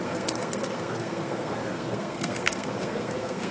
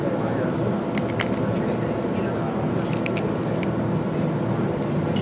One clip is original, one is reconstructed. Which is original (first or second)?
second